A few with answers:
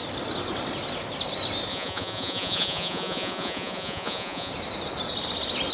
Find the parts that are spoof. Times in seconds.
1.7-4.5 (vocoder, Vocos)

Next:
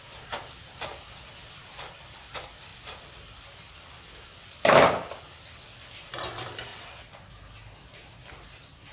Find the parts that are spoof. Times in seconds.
0.0-6.7 (vocoder, BigVGAN v2); 7.6-8.9